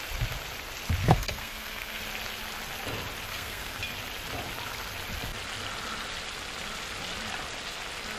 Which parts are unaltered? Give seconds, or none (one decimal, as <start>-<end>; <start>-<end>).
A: 0.0-1.0; 2.0-3.3; 3.8-8.2